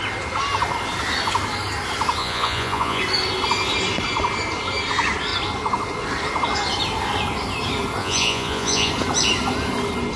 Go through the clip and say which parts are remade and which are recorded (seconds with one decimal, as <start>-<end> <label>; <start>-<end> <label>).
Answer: 0.0-2.2 recorded; 2.2-3.0 remade; 3.0-8.0 recorded; 8.0-8.9 remade; 8.9-10.2 recorded